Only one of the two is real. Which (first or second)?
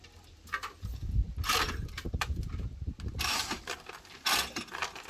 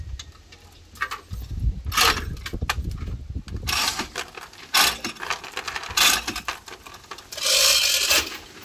second